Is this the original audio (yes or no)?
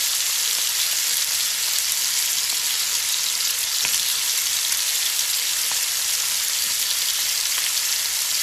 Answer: yes